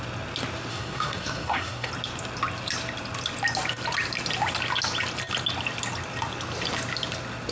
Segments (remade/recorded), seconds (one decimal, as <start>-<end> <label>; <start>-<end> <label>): 0.0-0.7 recorded; 0.7-1.9 remade; 1.9-7.5 recorded

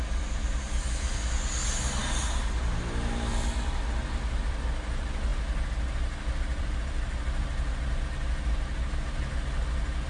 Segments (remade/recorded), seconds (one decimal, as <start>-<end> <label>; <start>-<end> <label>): 0.0-10.1 recorded

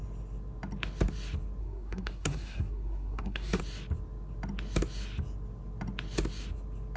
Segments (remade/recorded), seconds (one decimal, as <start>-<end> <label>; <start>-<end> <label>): 0.0-1.6 recorded; 1.6-3.6 remade; 3.6-7.0 recorded

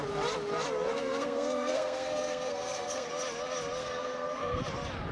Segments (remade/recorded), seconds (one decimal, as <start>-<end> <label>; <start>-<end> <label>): 0.0-0.9 recorded; 0.9-3.1 remade; 3.1-3.8 recorded; 3.8-4.6 remade; 4.6-5.1 recorded

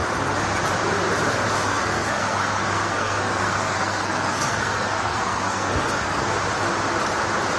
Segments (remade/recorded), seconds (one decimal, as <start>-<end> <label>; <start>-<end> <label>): 0.0-1.7 recorded; 1.7-6.3 remade; 6.3-7.6 recorded

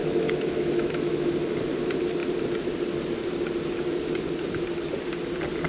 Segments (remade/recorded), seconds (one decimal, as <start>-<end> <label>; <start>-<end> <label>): 0.0-1.3 remade; 1.3-5.7 recorded